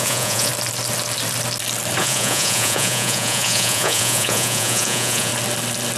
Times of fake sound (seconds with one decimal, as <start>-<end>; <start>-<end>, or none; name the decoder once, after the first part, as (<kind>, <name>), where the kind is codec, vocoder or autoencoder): 0.0-0.5 (vocoder, Vocos); 2.0-5.3